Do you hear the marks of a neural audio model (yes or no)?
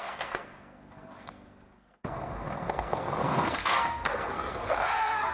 yes